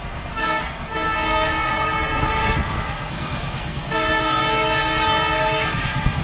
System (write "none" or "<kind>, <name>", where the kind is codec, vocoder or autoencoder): codec, SNAC